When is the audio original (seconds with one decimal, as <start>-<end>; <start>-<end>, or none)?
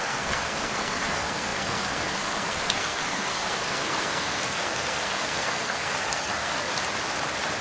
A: 6.7-7.6